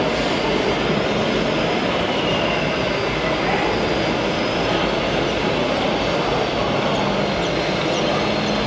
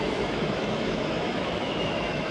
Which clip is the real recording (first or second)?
first